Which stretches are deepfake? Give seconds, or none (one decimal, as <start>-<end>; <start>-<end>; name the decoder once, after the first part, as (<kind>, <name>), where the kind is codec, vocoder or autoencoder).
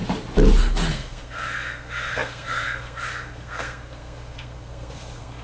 0.9-5.4 (codec, SNAC)